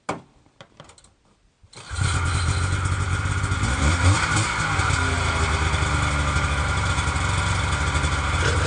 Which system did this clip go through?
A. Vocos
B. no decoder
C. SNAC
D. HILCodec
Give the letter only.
B